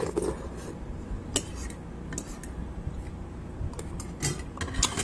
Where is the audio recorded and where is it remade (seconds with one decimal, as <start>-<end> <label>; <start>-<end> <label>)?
0.0-5.0 recorded